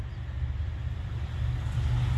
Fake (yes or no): no